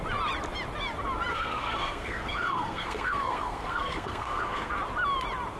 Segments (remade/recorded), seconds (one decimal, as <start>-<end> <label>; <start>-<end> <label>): 0.0-1.3 recorded; 1.3-4.7 remade; 4.7-5.6 recorded